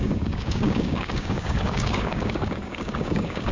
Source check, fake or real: fake